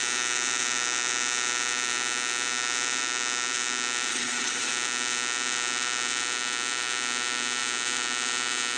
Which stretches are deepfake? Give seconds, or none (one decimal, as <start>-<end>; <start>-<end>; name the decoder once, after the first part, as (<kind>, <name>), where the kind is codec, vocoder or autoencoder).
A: 4.1-4.7 (codec, HILCodec)